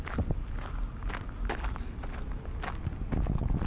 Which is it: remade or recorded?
recorded